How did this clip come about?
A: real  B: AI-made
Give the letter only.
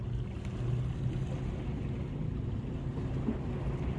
A